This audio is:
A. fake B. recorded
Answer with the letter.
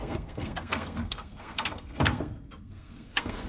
A